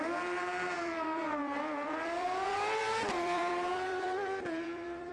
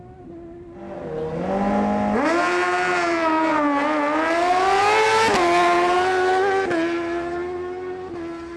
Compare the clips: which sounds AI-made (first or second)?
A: first